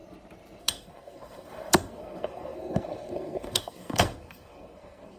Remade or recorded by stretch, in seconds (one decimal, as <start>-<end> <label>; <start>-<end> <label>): 0.0-0.6 recorded; 0.6-5.2 remade